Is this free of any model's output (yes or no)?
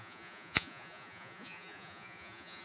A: no